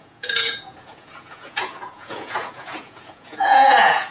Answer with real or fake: fake